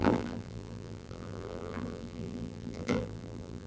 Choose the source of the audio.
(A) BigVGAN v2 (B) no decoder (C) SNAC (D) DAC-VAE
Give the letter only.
A